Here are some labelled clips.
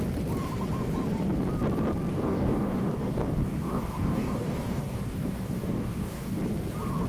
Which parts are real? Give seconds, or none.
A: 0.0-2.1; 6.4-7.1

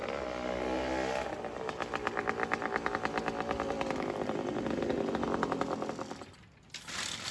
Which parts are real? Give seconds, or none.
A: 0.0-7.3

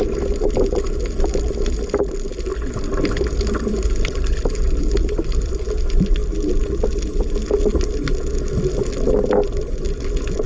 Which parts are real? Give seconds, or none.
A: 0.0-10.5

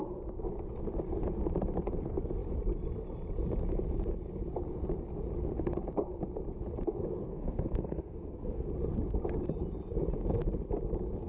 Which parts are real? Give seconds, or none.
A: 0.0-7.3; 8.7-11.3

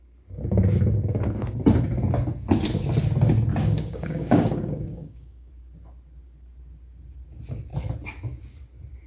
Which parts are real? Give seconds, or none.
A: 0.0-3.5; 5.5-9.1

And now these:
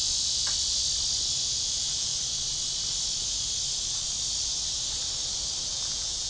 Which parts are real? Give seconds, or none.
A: 0.8-1.4; 2.1-5.7

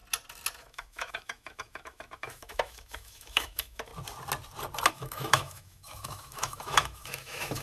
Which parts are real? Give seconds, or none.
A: 0.0-0.6; 3.9-4.9

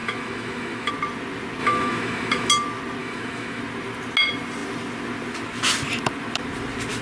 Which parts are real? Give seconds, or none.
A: 0.9-1.6; 2.5-3.0; 3.6-7.0